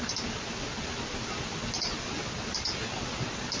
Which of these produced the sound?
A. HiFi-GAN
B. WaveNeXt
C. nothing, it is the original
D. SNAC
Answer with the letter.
C